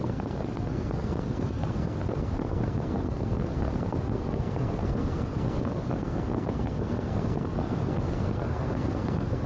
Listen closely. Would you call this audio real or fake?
fake